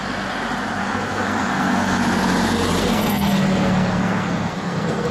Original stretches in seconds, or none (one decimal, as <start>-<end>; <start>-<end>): 0.0-0.8; 2.0-2.8